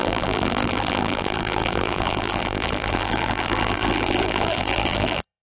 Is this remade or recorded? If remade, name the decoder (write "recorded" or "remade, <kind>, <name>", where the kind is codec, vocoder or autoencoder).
remade, vocoder, BigVGAN v2